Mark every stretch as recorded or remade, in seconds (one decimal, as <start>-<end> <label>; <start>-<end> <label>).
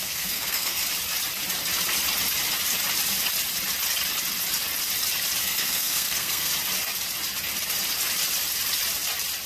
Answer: 0.0-0.8 remade; 0.8-5.4 recorded; 5.4-6.5 remade; 6.5-9.5 recorded